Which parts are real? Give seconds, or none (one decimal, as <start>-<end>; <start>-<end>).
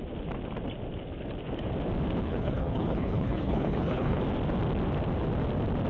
0.0-2.2; 4.2-5.9